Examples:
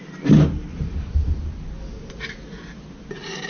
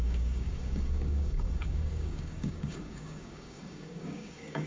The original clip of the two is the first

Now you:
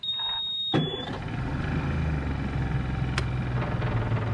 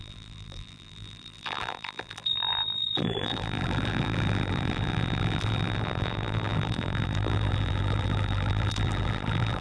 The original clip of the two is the first